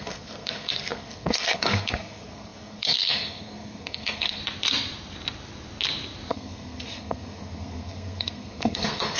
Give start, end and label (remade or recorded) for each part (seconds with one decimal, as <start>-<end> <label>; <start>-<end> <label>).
0.0-4.4 remade; 4.4-6.3 recorded; 6.3-9.2 remade